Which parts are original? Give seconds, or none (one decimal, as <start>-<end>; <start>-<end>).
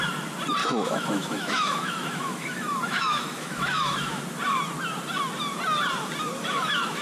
0.0-0.6; 4.2-6.4